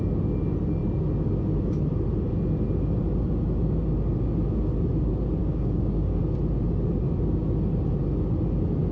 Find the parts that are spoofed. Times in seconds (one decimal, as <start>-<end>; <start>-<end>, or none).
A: 5.4-6.2